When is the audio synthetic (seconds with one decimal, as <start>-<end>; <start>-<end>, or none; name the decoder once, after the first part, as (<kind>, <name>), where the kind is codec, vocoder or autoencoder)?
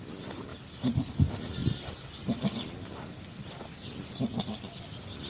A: none